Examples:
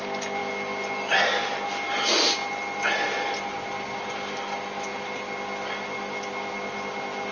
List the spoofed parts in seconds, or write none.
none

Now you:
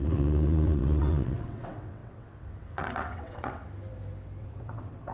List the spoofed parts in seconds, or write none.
0.0-3.6 (vocoder, WaveNeXt); 4.4-5.1

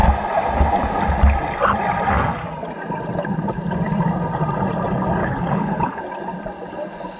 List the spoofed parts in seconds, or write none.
5.2-6.0 (codec, HILCodec)

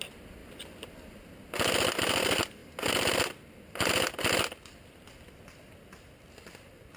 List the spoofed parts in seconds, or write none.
none

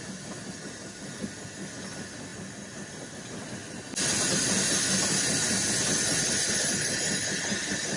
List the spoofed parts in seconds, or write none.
none

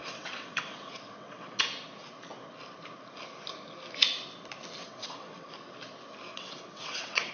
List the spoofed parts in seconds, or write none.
0.0-1.6 (vocoder, WaveNeXt); 4.8-5.5; 6.3-7.3

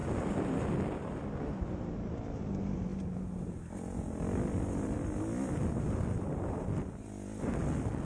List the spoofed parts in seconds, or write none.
none